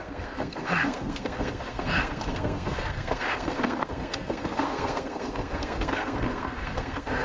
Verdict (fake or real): fake